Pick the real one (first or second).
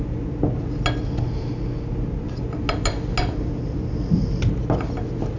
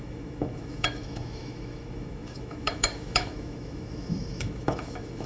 first